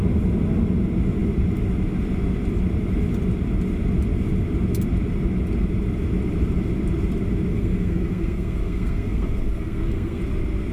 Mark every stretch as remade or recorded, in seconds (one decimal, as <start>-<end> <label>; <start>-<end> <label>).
0.0-7.5 recorded; 7.5-10.2 remade; 10.2-10.7 recorded